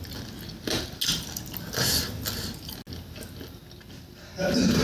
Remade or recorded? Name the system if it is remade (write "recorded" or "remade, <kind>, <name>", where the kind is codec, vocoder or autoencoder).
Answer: recorded